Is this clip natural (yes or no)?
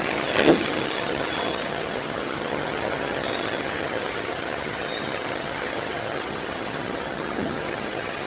no